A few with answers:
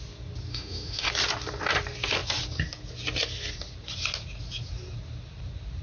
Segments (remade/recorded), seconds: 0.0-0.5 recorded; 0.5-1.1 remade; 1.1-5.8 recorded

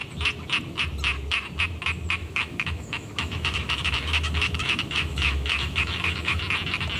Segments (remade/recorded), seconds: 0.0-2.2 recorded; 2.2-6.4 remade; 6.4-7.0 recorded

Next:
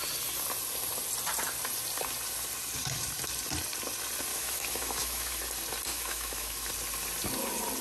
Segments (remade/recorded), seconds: 0.0-4.3 recorded; 4.3-5.4 remade; 5.4-5.9 recorded; 5.9-6.7 remade; 6.7-7.8 recorded